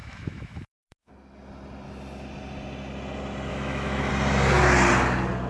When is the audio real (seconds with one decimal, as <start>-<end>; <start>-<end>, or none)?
1.1-3.5; 4.1-5.5

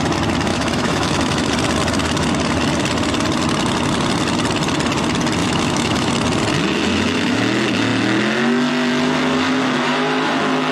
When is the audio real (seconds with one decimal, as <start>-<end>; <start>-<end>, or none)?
0.0-0.5; 1.5-5.4; 6.1-6.9; 7.4-10.7